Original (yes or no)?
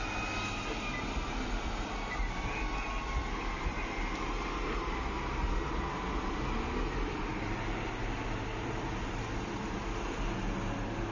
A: yes